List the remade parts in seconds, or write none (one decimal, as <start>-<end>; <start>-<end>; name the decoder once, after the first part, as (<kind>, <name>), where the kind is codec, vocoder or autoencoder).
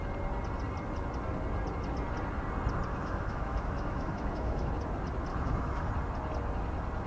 2.9-4.7 (autoencoder, DAC-VAE); 5.3-5.9